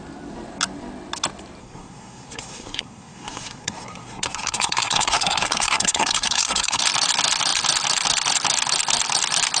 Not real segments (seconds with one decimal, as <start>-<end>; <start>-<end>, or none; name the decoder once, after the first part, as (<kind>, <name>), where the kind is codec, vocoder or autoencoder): 1.6-6.8 (codec, SNAC)